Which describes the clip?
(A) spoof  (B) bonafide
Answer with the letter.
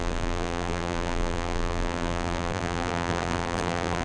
A